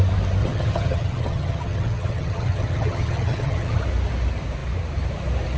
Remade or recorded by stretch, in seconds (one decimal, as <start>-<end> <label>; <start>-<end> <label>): 0.0-0.4 recorded; 0.4-3.8 remade; 3.8-5.6 recorded